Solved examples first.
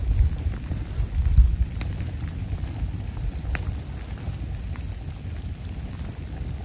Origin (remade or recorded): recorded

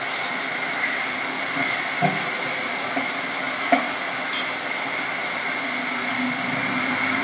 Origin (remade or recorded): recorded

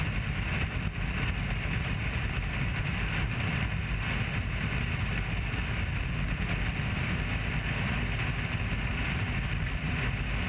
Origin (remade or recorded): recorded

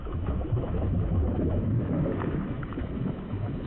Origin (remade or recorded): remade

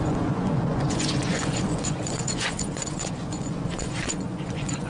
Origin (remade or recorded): remade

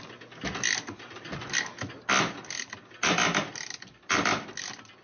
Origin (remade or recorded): recorded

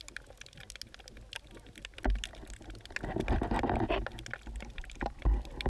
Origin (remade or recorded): recorded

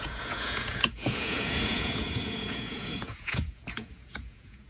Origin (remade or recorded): remade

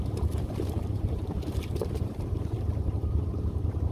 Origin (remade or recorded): remade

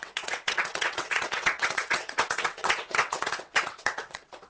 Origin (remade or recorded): remade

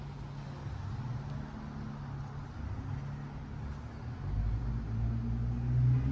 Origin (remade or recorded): recorded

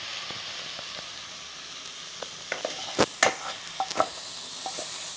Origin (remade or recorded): recorded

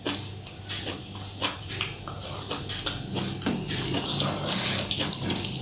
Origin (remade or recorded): recorded